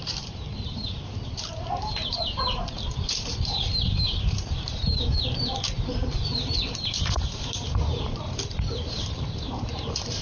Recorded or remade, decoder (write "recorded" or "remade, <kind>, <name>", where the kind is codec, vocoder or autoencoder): remade, vocoder, BigVGAN v2